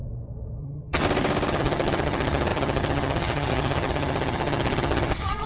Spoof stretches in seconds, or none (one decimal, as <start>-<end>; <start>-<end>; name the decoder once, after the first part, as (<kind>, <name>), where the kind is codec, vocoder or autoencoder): 0.6-1.0 (vocoder, HiFi-GAN); 1.5-5.5

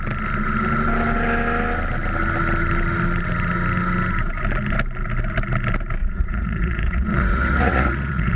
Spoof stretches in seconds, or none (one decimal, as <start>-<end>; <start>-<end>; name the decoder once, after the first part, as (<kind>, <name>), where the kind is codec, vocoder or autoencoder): 6.0-8.4 (vocoder, Vocos)